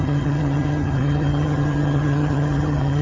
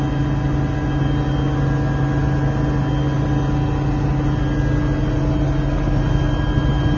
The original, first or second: second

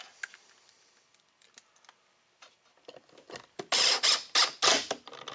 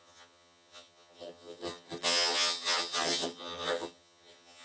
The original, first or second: first